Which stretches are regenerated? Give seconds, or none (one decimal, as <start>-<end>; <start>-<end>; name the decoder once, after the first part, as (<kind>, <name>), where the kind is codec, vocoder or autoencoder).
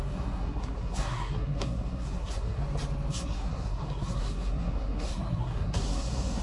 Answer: 0.0-2.6 (codec, SNAC); 3.1-6.4